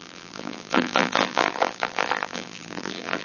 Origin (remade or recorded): remade